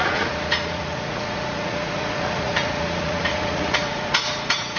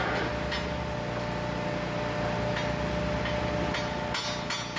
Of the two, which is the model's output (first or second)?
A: first